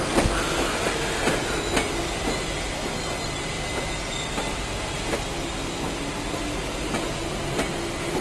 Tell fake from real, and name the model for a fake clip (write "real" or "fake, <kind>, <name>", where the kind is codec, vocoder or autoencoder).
real